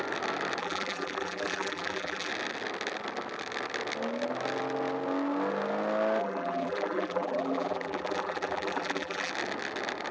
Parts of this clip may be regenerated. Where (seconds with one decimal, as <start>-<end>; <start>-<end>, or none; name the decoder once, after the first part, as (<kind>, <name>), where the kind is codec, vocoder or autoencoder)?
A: 0.6-2.3 (vocoder, BigVGAN v2); 6.2-9.3

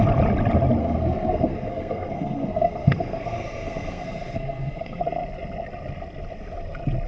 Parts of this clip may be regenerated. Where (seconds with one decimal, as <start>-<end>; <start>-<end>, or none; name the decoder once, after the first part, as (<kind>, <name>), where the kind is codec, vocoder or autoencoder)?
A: 0.8-5.0 (codec, SNAC)